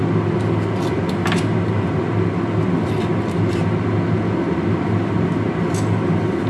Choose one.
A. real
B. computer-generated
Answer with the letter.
A